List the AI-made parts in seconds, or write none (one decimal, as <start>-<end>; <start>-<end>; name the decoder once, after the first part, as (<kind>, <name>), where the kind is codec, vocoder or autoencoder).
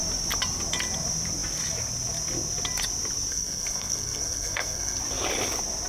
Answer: 3.3-5.0 (codec, SNAC)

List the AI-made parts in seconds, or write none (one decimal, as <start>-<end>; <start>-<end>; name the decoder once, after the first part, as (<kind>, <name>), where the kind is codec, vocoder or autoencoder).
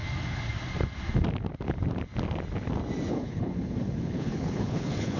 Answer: 3.1-5.2 (codec, HILCodec)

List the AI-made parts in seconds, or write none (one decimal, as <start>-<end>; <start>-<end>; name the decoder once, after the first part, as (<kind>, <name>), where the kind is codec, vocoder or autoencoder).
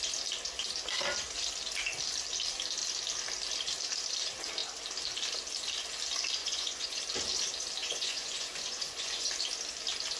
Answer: 6.4-7.0 (vocoder, Vocos); 7.8-9.3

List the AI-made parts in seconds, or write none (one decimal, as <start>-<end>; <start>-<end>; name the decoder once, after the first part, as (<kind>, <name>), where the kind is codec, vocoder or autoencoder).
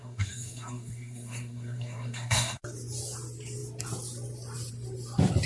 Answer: 0.0-2.6 (codec, SNAC)